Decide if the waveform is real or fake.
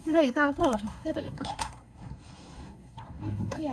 fake